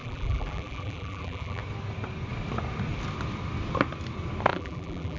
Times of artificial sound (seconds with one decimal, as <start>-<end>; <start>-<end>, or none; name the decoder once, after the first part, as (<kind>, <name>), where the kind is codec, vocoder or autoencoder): 0.0-1.6 (vocoder, BigVGAN v2); 4.5-5.2